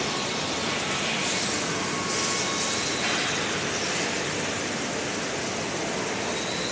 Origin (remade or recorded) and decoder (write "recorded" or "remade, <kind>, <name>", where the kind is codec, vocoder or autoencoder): recorded